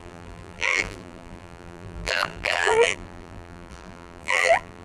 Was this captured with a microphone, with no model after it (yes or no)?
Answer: no